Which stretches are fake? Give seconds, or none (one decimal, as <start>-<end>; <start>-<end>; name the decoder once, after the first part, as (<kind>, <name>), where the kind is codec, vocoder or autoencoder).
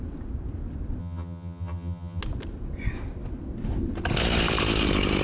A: 1.0-2.2 (vocoder, HiFi-GAN)